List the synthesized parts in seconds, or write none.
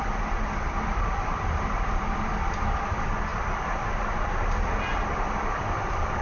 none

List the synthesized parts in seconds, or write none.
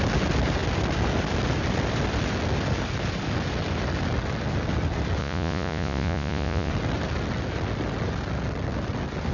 5.2-6.7 (vocoder, Vocos)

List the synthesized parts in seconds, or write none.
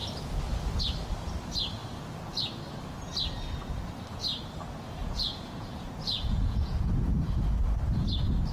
5.0-6.9 (vocoder, Vocos)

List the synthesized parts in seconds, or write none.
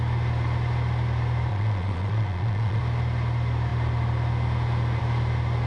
1.5-2.8 (vocoder, Vocos)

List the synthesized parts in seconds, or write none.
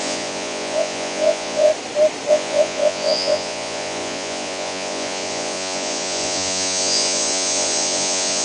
0.0-1.7 (vocoder, Vocos); 2.3-8.4